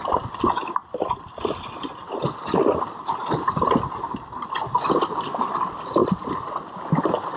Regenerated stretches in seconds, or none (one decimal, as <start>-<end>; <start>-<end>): 0.0-0.6; 3.2-6.0